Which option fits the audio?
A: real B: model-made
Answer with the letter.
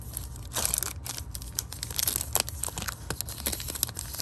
A